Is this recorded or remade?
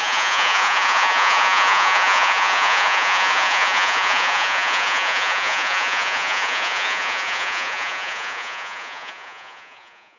remade